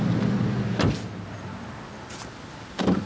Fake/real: real